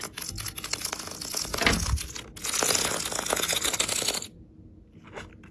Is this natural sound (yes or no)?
yes